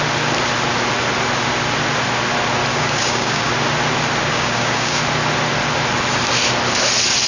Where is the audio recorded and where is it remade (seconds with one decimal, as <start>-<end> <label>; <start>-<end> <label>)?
0.0-2.7 recorded; 2.7-3.5 remade; 3.5-4.3 recorded; 4.3-5.0 remade; 5.0-7.3 recorded